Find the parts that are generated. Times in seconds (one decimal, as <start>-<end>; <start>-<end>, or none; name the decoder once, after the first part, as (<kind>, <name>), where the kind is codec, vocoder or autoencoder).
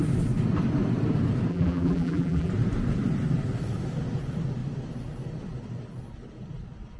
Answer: 1.5-2.5 (vocoder, BigVGAN v2)